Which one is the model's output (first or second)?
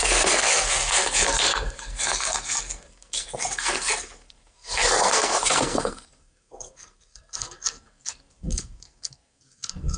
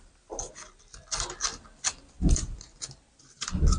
first